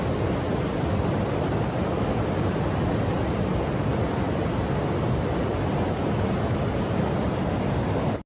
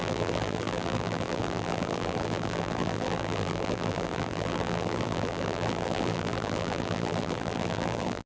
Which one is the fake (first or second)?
second